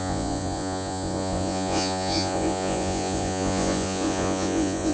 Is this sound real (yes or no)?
no